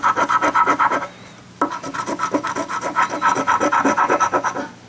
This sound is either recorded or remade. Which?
recorded